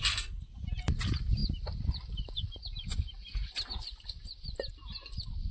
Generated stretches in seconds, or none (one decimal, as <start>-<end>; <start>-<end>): none

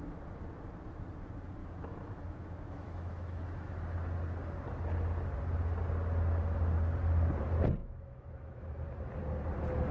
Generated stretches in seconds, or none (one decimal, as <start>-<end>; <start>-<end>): 1.6-3.8; 7.8-8.6

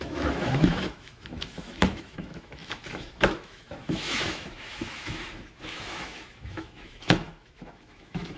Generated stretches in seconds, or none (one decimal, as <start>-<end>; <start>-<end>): 0.0-8.4